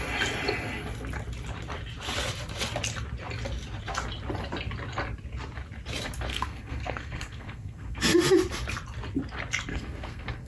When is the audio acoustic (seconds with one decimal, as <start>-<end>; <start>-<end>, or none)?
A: 0.0-6.3; 8.0-9.7